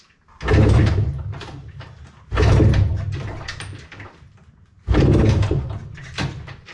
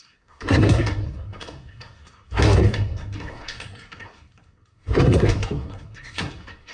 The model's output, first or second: second